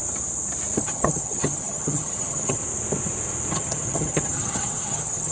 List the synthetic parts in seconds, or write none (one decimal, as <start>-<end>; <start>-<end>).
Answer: 0.8-2.6; 3.5-5.3